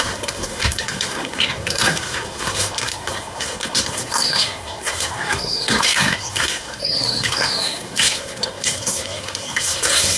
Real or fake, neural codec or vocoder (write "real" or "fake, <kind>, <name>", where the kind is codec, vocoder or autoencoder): fake, codec, SNAC